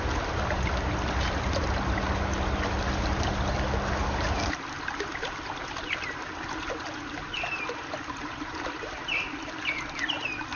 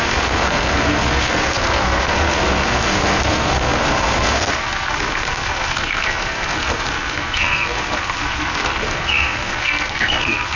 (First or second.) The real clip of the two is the first